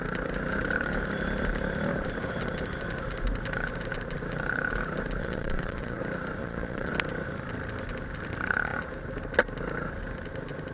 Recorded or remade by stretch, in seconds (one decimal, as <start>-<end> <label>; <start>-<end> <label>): 0.0-5.2 recorded; 5.2-6.0 remade; 6.0-6.4 recorded; 6.4-6.9 remade; 6.9-10.7 recorded